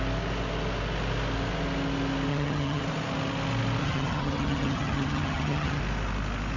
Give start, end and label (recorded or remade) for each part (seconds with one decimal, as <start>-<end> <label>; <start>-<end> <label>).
0.0-2.3 recorded; 2.3-2.8 remade; 2.8-3.8 recorded; 3.8-5.8 remade; 5.8-6.6 recorded